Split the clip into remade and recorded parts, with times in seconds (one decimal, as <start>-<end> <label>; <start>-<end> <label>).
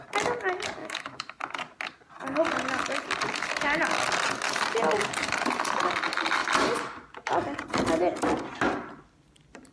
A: 0.0-0.8 recorded; 0.8-1.5 remade; 1.5-9.7 recorded